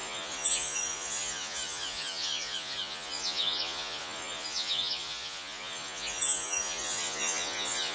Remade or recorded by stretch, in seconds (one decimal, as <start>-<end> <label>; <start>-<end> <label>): 0.0-7.9 remade